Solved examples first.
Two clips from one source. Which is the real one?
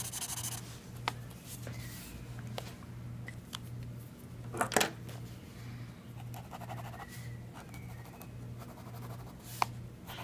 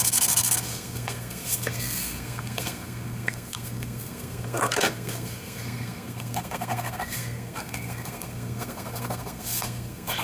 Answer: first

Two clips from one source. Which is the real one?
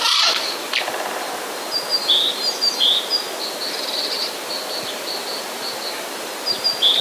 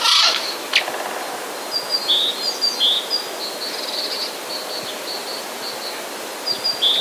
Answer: second